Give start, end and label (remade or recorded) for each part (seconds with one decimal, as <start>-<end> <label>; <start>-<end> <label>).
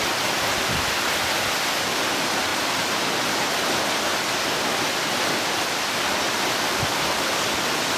0.0-8.0 recorded